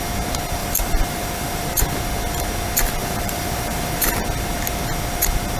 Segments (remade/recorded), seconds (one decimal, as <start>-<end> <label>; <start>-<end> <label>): 0.0-0.6 recorded; 0.6-2.0 remade; 2.0-3.0 recorded; 3.0-4.1 remade; 4.1-5.6 recorded